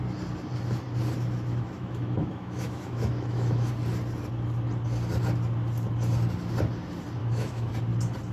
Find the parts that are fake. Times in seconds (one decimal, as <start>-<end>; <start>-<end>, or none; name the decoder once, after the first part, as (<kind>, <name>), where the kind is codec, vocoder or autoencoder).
1.5-3.7 (autoencoder, DAC-VAE); 7.2-7.7